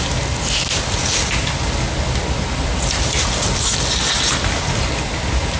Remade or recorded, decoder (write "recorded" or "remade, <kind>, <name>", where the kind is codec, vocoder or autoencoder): recorded